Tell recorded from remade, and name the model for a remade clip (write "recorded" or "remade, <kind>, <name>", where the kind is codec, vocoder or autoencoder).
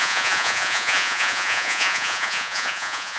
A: remade, vocoder, Vocos